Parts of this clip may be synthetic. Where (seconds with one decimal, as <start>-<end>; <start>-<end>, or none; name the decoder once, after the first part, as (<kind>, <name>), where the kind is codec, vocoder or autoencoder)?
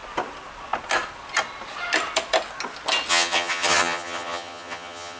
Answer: 3.1-5.2 (vocoder, HiFi-GAN)